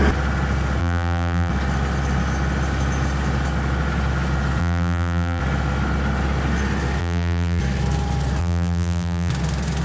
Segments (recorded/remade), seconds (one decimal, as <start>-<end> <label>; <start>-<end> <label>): 0.0-0.8 recorded; 0.8-1.5 remade; 1.5-4.6 recorded; 4.6-5.4 remade; 5.4-7.0 recorded; 7.0-7.6 remade; 7.6-8.4 recorded; 8.4-9.3 remade; 9.3-9.8 recorded